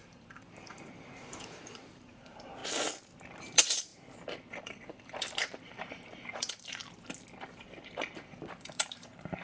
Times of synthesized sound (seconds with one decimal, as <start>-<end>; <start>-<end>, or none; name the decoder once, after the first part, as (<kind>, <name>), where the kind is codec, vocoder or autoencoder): 0.0-2.6 (vocoder, BigVGAN v2); 3.4-3.9; 4.6-6.8; 7.6-9.4

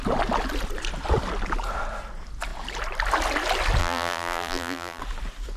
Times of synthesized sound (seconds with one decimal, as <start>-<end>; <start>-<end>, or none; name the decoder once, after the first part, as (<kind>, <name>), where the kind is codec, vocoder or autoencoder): 3.8-5.0 (vocoder, BigVGAN v2)